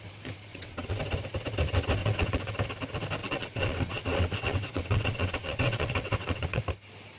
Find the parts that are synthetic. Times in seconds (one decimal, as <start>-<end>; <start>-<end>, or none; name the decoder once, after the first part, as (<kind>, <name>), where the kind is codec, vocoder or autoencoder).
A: 0.5-1.0 (vocoder, WaveNeXt); 2.0-2.6; 3.2-6.6